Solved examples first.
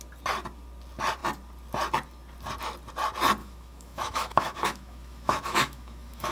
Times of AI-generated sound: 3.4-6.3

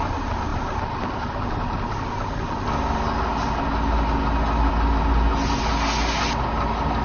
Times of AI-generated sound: none

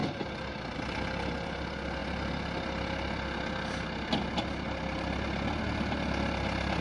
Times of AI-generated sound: none

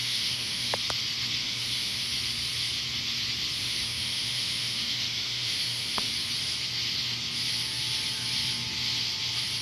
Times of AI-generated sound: 0.0-0.7; 1.4-2.0; 3.6-6.1

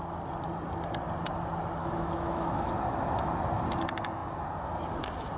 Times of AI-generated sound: 1.8-2.7